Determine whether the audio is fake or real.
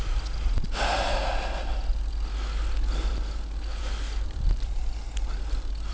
real